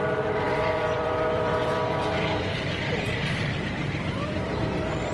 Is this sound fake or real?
fake